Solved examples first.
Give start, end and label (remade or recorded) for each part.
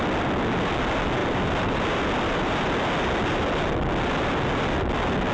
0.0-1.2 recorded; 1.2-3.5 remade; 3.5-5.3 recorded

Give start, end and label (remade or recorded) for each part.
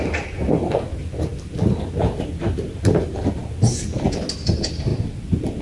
0.0-5.6 recorded